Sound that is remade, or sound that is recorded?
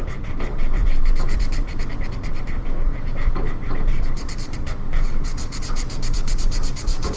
remade